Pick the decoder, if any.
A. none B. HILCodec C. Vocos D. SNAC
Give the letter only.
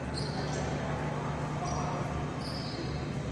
A